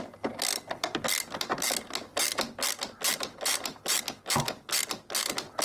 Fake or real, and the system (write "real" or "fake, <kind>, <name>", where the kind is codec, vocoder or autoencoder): real